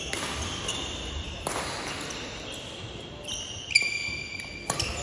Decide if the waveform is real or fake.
real